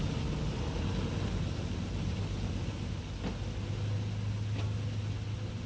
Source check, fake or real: real